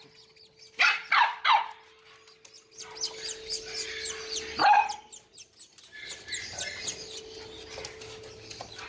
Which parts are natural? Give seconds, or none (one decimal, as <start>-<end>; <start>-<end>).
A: 0.0-8.9